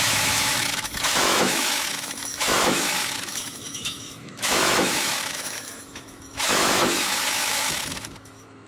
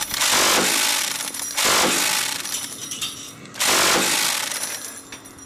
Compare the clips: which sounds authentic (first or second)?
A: second